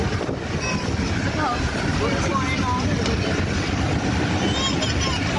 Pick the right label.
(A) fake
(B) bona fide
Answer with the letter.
B